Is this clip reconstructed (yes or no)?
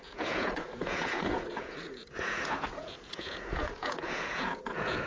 yes